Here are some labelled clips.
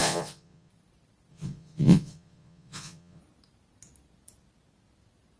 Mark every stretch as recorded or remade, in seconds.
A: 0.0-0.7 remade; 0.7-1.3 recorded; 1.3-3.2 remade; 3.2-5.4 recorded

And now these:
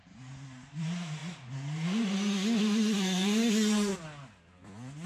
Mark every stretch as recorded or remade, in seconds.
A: 0.0-1.2 remade; 1.2-2.6 recorded; 2.6-3.9 remade; 3.9-4.5 recorded; 4.5-5.1 remade

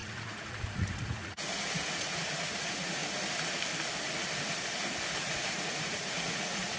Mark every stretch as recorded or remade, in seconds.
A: 0.0-3.0 remade; 3.0-5.2 recorded; 5.2-6.8 remade

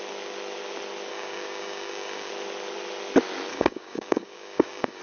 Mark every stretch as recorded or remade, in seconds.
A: 0.0-1.1 recorded; 1.1-2.3 remade; 2.3-3.5 recorded; 3.5-5.0 remade